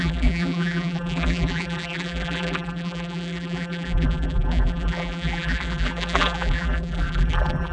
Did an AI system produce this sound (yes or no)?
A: yes